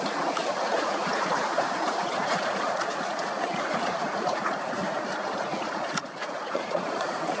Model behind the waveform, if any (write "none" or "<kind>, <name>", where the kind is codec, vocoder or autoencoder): vocoder, Vocos